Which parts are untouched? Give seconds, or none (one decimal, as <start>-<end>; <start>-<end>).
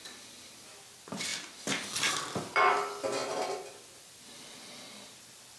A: none